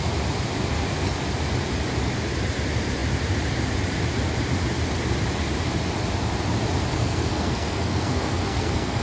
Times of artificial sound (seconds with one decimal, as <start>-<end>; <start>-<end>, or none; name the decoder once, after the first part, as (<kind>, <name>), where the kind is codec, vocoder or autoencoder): 6.9-9.0 (codec, SNAC)